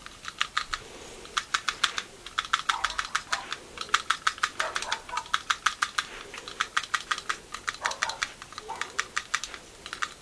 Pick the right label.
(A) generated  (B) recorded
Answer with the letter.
B